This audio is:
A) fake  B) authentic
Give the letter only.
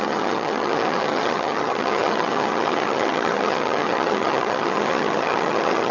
A